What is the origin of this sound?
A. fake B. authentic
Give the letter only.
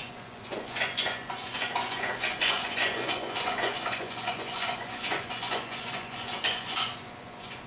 A